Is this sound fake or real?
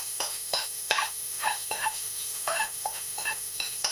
fake